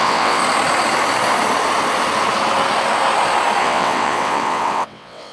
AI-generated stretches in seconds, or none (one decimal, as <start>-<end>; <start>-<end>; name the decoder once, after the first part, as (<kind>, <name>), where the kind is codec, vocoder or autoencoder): 0.0-0.4 (vocoder, WaveNeXt); 3.6-5.3